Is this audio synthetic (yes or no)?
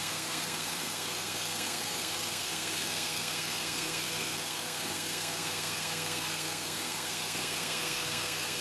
yes